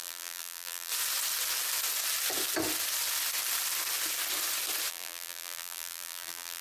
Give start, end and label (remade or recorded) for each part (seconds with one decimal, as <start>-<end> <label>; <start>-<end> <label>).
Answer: 0.0-0.9 remade; 0.9-4.9 recorded; 4.9-6.6 remade